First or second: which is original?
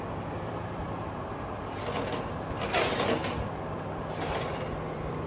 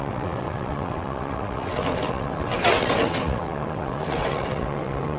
first